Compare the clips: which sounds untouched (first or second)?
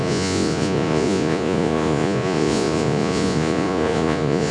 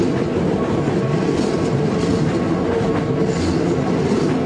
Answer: second